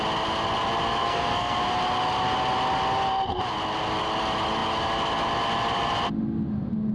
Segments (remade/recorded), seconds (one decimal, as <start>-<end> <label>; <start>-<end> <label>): 0.0-1.0 recorded; 1.0-1.6 remade; 1.6-6.9 recorded